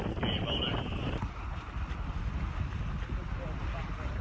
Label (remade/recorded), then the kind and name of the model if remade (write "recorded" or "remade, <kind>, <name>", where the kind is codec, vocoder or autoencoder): recorded